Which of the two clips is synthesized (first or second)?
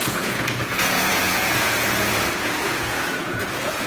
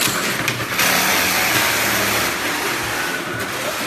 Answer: first